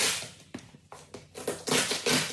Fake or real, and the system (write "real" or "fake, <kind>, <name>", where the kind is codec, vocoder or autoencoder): real